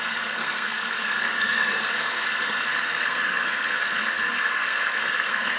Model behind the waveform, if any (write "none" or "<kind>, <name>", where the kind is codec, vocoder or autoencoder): codec, SNAC